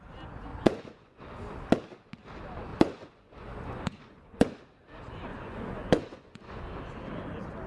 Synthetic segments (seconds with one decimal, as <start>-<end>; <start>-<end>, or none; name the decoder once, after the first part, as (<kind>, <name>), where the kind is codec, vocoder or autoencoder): 0.5-1.2 (vocoder, Vocos); 2.7-4.6; 5.3-6.6